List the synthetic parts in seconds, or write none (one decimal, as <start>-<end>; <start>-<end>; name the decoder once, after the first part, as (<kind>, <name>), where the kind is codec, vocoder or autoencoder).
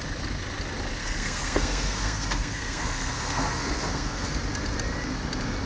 1.0-4.4 (codec, SNAC)